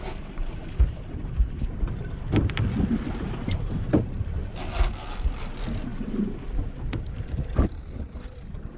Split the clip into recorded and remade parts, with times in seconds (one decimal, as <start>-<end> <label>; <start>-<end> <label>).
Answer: 0.0-8.8 remade